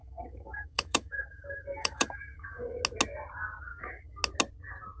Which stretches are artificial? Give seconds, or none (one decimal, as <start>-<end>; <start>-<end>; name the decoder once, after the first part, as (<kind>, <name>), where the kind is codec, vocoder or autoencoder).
0.0-2.8 (autoencoder, DAC-VAE); 3.7-4.2